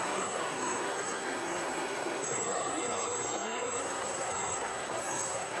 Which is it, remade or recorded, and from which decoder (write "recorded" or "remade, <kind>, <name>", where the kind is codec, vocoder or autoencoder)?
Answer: remade, codec, SNAC